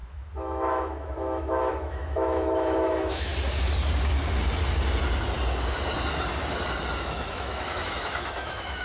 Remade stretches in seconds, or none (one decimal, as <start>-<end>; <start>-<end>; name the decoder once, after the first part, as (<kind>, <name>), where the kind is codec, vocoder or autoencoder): 0.0-3.3 (autoencoder, DAC-VAE); 7.0-8.8